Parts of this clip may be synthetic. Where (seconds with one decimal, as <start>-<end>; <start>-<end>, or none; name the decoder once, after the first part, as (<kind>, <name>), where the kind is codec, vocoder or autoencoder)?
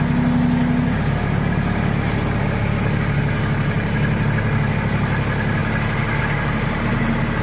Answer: none